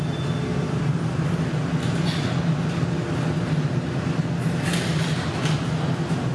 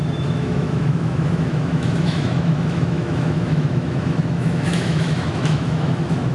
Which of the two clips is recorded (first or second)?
first